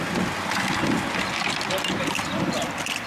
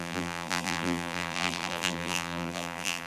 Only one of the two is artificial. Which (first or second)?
second